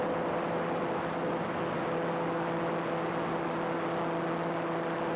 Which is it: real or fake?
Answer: real